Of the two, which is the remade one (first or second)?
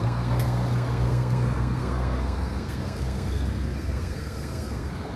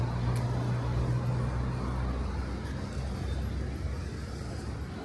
first